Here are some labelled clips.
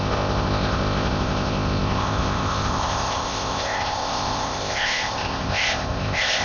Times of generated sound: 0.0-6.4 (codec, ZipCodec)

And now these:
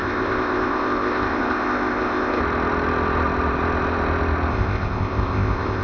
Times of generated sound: 0.0-2.4 (codec, ZipCodec); 4.5-5.8

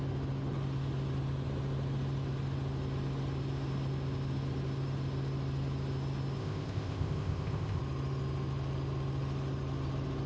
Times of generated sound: 6.4-7.8 (codec, ZipCodec)